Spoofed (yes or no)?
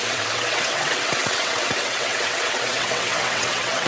yes